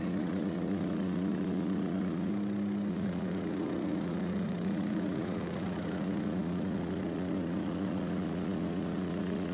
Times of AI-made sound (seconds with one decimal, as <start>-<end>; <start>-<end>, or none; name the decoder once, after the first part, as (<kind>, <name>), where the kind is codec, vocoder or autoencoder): 0.0-2.3 (vocoder, Vocos); 2.9-9.5